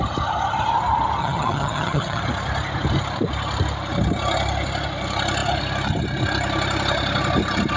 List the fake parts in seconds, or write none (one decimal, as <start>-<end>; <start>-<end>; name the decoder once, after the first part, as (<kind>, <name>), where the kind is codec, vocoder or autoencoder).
1.2-2.2 (vocoder, HiFi-GAN)